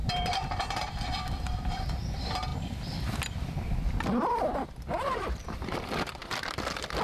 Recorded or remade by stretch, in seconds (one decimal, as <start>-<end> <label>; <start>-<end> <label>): 0.0-7.0 remade